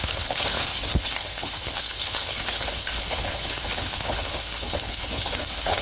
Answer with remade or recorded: remade